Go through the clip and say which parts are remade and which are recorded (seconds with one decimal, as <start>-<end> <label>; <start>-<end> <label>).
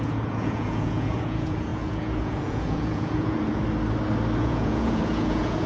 0.0-3.6 remade; 3.6-4.4 recorded; 4.4-5.7 remade